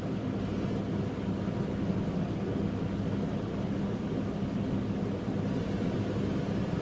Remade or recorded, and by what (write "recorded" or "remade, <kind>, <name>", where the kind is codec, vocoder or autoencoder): recorded